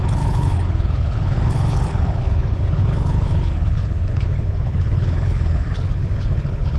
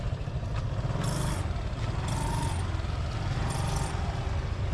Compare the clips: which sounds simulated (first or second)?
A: first